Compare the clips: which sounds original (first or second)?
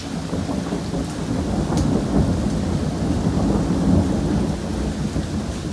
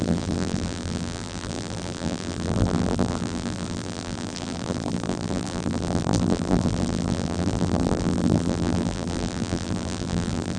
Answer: first